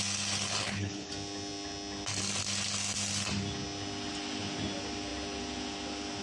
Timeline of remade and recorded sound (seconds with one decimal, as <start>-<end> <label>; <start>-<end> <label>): 0.0-0.6 recorded; 0.6-1.1 remade; 1.1-6.2 recorded